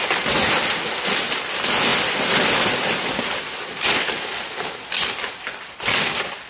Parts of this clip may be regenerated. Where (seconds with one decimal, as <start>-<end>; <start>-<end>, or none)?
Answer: none